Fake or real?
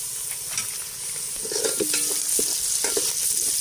real